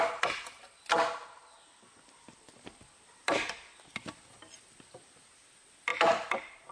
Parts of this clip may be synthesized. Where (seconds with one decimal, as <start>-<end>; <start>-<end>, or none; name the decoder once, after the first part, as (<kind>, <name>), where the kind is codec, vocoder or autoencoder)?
none